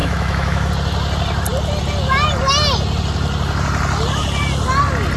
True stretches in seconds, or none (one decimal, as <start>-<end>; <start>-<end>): 0.7-5.2